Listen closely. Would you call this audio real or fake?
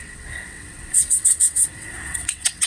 fake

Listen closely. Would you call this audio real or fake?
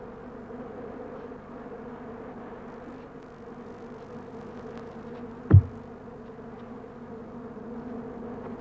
real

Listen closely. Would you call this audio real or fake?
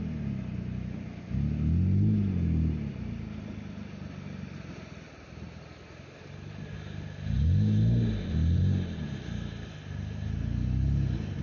real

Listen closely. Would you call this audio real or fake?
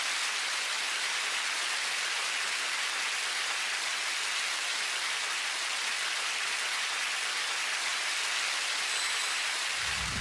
real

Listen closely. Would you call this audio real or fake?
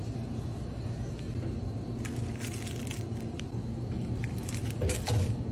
real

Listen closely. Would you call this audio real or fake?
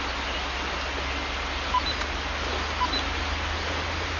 real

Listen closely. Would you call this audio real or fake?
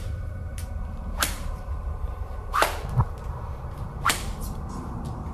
fake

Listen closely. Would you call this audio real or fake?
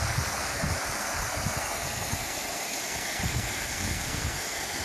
fake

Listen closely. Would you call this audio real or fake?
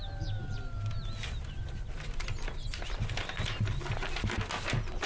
real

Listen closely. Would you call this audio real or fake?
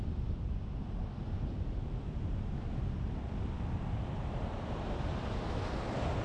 real